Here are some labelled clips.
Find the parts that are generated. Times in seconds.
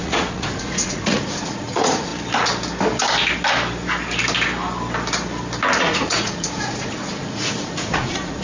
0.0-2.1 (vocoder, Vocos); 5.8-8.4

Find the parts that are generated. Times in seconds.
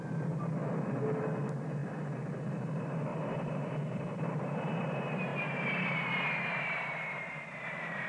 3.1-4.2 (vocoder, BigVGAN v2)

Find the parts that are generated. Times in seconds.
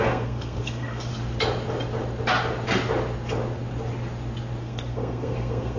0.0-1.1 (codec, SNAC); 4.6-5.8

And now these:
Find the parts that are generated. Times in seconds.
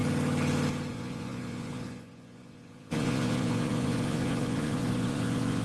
0.9-5.6 (vocoder, Vocos)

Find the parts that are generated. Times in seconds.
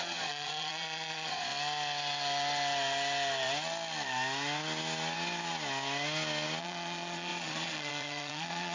0.0-1.5 (vocoder, Vocos); 6.6-8.7